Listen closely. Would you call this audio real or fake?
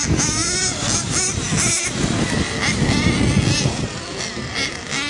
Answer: real